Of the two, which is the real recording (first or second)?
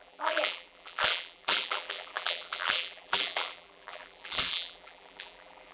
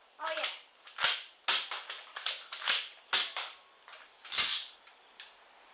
second